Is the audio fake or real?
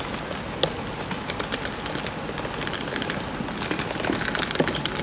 real